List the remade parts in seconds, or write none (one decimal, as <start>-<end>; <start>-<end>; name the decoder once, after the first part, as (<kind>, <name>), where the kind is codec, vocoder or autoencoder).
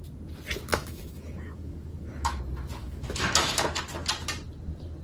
0.7-2.4 (autoencoder, DAC-VAE); 2.8-3.6